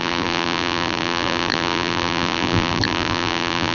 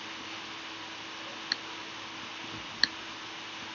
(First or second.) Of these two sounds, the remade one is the first